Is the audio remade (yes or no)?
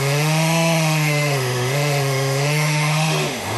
yes